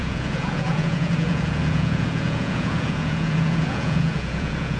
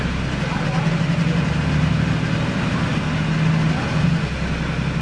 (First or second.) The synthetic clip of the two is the first